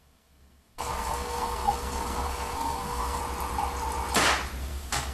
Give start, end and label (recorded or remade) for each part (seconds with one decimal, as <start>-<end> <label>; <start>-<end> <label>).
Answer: 0.0-3.2 remade; 3.2-4.6 recorded; 4.6-5.1 remade